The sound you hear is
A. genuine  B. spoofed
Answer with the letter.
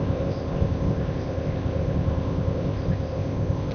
B